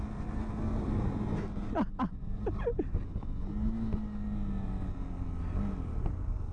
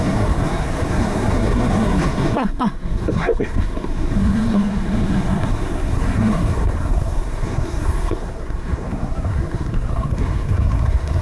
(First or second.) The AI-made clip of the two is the second